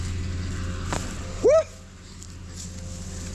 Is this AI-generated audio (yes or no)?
no